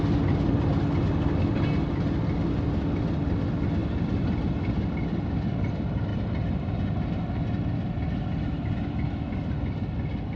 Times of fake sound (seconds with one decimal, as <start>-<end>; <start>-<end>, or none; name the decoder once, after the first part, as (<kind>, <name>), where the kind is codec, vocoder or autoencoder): 3.8-4.4 (vocoder, BigVGAN v2)